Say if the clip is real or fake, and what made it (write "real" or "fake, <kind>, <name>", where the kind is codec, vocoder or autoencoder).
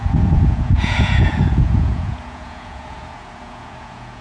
fake, vocoder, Vocos